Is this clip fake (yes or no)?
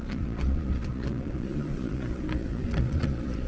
yes